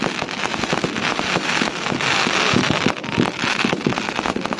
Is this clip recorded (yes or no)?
yes